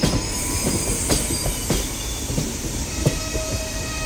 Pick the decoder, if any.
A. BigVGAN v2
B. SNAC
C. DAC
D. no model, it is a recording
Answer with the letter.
A